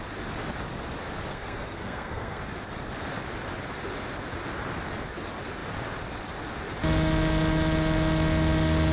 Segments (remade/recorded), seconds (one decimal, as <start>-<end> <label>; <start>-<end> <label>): 0.0-1.3 recorded; 1.3-2.4 remade; 2.4-8.9 recorded